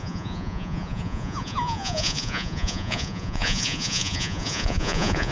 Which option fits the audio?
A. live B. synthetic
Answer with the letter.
B